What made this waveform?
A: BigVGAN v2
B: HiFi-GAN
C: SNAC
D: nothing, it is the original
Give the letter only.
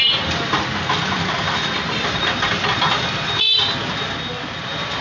D